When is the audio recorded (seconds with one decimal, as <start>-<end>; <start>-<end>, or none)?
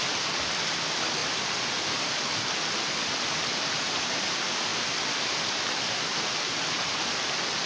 0.0-7.7